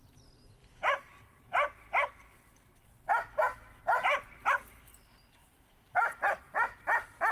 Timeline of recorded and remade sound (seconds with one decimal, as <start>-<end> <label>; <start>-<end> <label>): 0.0-5.4 recorded; 5.4-6.4 remade; 6.4-7.3 recorded